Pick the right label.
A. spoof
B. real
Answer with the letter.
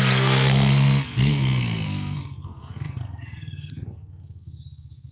A